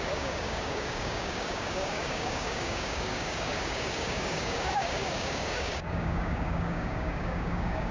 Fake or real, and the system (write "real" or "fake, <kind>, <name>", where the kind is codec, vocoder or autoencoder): fake, codec, DAC